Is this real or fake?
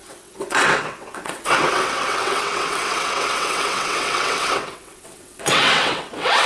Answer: fake